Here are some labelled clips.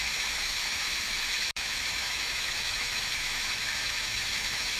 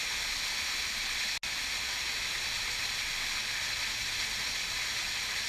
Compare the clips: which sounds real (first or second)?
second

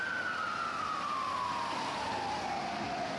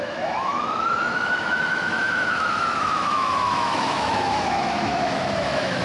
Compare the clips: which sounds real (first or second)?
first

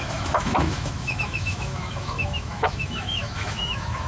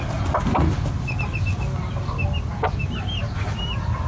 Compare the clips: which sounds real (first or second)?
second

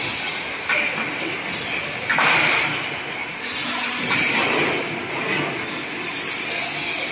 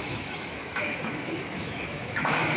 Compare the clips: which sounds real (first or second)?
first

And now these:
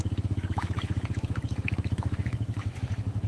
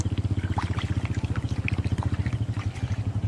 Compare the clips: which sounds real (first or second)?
second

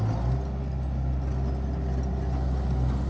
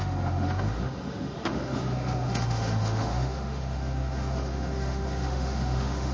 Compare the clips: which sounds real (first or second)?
first